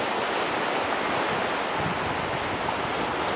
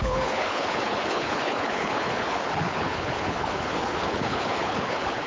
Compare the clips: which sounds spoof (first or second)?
second